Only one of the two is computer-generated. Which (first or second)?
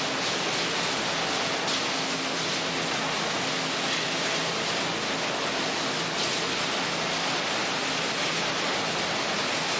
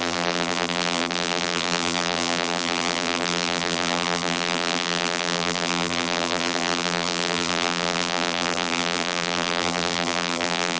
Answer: second